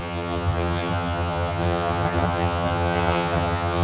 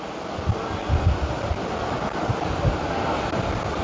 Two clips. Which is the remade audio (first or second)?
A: first